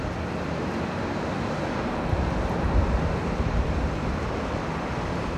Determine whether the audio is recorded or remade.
recorded